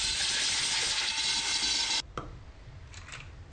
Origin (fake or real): real